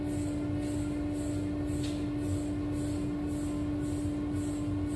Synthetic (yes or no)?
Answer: no